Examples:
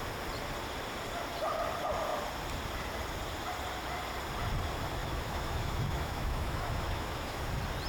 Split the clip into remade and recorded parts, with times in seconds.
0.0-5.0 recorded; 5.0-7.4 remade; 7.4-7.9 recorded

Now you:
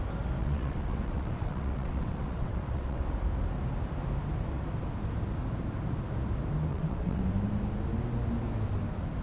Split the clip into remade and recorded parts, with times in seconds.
0.0-0.4 recorded; 0.4-3.1 remade; 3.1-6.7 recorded; 6.7-7.2 remade; 7.2-9.2 recorded

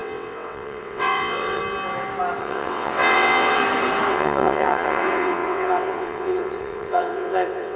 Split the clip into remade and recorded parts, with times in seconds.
0.0-1.6 remade; 1.6-2.4 recorded; 2.4-3.6 remade; 3.6-4.1 recorded; 4.1-7.8 remade

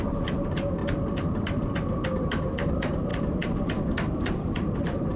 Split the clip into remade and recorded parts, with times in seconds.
0.0-0.8 remade; 0.8-2.7 recorded; 2.7-5.2 remade